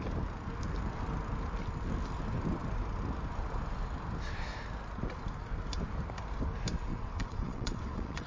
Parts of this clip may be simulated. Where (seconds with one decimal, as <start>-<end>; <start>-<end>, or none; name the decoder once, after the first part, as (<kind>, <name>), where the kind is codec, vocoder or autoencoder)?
6.9-8.3 (vocoder, WaveNeXt)